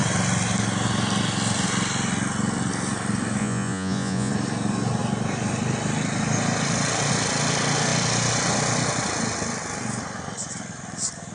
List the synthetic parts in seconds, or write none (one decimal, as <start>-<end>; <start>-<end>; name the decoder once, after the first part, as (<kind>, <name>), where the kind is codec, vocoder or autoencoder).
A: 3.4-4.3 (vocoder, Vocos)

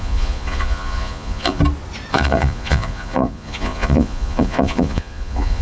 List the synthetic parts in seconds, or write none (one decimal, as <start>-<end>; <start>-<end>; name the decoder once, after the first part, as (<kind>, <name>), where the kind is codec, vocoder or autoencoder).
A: 0.0-1.6 (vocoder, Vocos); 2.1-5.6

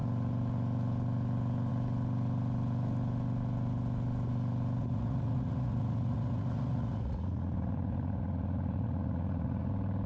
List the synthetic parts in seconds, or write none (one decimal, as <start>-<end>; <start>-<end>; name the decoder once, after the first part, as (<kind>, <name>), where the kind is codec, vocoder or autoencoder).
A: 4.8-9.7 (vocoder, Vocos)

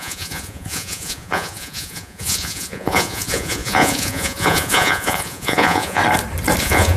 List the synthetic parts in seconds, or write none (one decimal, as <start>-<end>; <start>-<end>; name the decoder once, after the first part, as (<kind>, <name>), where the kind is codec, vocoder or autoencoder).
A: 0.0-6.0 (vocoder, Vocos); 6.6-7.0

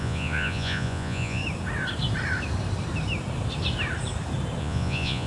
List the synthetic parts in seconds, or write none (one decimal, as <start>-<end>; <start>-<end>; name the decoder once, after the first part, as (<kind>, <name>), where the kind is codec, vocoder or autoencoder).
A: 0.0-1.4 (vocoder, Vocos); 4.6-5.3

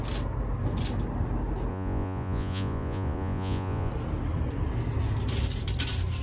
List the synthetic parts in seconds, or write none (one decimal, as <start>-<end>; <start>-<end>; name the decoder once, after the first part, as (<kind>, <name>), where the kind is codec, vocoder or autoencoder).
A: 1.7-3.9 (vocoder, Vocos)